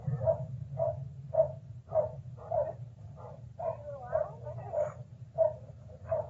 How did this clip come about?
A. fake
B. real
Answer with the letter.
A